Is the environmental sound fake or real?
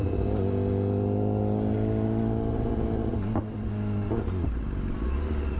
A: real